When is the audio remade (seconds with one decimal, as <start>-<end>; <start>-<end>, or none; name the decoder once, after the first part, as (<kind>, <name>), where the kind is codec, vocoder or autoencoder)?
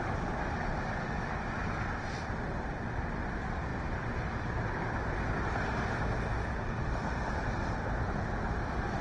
none